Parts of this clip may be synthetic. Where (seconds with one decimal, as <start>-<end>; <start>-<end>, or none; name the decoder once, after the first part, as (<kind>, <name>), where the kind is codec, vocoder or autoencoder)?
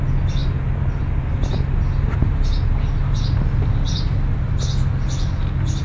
none